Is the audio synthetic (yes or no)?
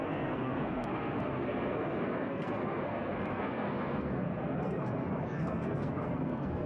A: yes